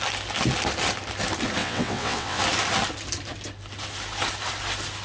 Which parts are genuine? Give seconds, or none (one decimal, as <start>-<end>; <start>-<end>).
0.0-1.6; 2.4-5.0